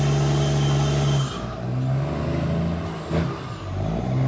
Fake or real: real